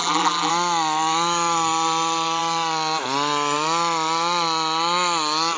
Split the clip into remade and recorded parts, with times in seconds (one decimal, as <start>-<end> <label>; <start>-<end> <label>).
0.0-0.5 remade; 0.5-5.6 recorded